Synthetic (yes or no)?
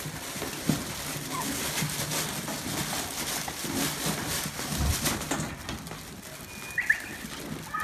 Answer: no